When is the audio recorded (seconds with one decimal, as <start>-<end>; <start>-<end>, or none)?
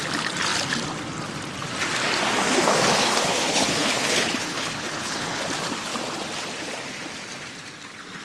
0.0-3.0; 5.4-8.2